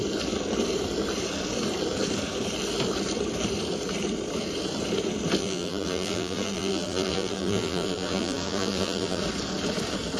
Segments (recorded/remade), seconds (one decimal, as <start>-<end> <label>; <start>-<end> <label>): 0.0-5.4 recorded; 5.4-9.2 remade; 9.2-10.2 recorded